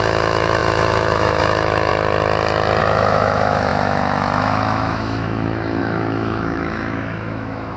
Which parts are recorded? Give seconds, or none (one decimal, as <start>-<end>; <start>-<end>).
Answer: 1.9-2.8